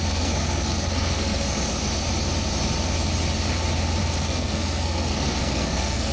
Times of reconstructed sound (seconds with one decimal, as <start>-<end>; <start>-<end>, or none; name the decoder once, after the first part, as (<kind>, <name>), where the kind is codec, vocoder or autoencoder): 0.0-1.7 (codec, SNAC); 4.0-6.1